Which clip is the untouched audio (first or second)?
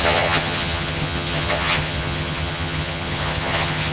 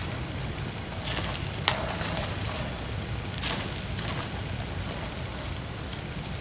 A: second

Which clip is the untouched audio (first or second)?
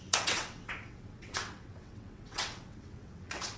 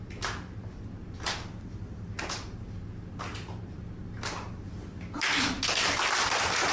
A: second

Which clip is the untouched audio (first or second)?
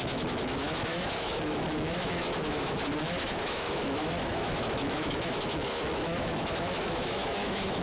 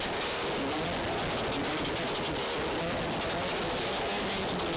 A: second